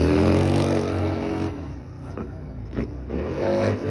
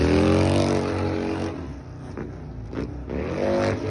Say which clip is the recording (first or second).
second